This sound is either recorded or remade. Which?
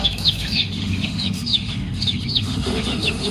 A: remade